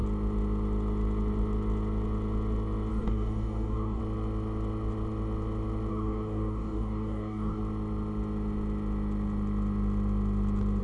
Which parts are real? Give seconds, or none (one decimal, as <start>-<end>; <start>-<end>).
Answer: 0.0-2.9; 4.0-5.9; 7.6-10.8